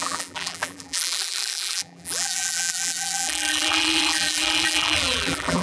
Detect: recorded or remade remade